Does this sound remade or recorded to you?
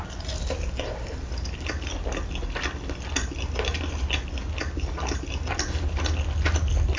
recorded